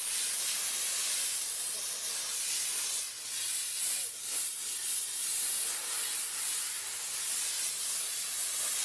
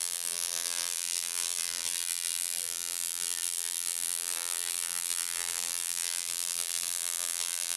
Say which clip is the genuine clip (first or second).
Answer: first